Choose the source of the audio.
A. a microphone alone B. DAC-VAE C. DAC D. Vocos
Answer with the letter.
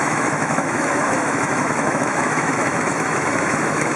B